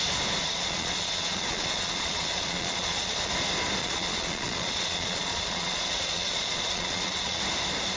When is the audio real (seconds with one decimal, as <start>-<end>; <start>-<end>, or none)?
0.0-0.4; 3.3-3.8; 7.4-8.0